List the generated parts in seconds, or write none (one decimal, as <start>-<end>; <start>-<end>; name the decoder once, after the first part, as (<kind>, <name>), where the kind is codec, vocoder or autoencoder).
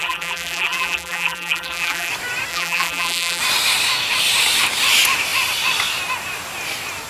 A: 0.0-2.1 (vocoder, BigVGAN v2); 2.5-3.4